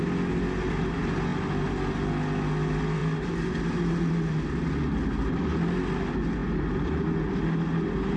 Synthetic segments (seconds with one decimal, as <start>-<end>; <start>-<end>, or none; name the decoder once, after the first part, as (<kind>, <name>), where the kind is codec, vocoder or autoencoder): none